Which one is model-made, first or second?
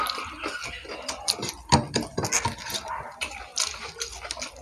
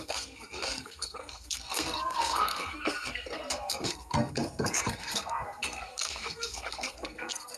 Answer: second